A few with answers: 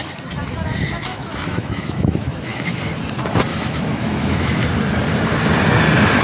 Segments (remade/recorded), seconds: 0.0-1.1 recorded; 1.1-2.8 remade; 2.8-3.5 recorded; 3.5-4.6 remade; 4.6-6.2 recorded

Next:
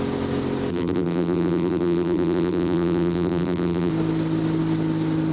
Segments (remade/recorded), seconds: 0.0-0.7 recorded; 0.7-3.9 remade; 3.9-5.3 recorded

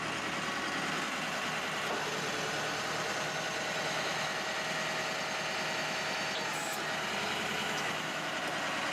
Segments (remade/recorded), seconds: 0.0-7.6 recorded; 7.6-8.3 remade; 8.3-8.9 recorded

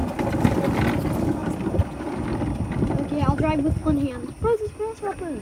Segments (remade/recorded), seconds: 0.0-5.4 recorded

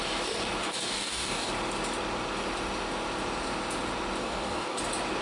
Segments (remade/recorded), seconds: 0.0-0.6 recorded; 0.6-1.5 remade; 1.5-4.2 recorded; 4.2-4.8 remade; 4.8-5.2 recorded

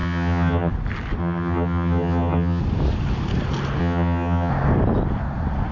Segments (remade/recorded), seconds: 0.0-0.7 remade; 0.7-1.2 recorded; 1.2-2.6 remade; 2.6-3.8 recorded; 3.8-4.5 remade; 4.5-5.7 recorded

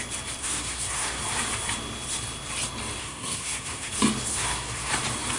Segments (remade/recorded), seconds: 0.0-0.4 recorded; 0.4-1.2 remade; 1.2-3.0 recorded; 3.0-3.9 remade; 3.9-4.3 recorded; 4.3-4.9 remade; 4.9-5.4 recorded